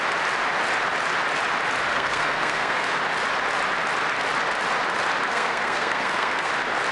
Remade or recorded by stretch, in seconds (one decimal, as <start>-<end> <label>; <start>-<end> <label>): 0.0-1.9 recorded; 1.9-3.0 remade; 3.0-5.3 recorded; 5.3-6.5 remade; 6.5-6.9 recorded